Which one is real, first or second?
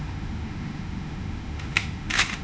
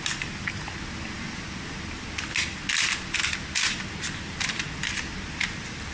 second